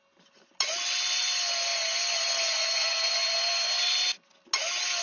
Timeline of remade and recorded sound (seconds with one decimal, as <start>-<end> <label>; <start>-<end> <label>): 0.0-5.0 recorded